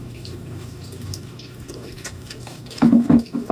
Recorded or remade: remade